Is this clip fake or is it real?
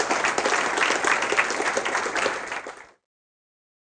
real